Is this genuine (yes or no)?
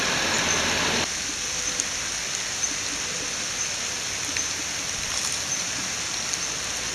yes